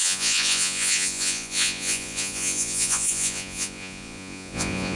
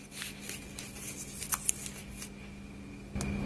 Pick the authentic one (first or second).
second